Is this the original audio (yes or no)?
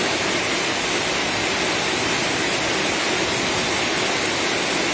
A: yes